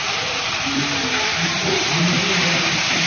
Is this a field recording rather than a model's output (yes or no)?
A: no